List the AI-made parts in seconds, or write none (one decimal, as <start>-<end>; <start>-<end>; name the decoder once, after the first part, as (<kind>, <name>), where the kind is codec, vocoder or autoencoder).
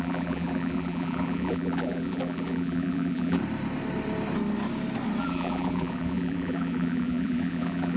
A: 0.0-3.4 (vocoder, BigVGAN v2); 5.2-8.0